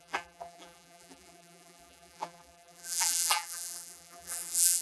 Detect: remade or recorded remade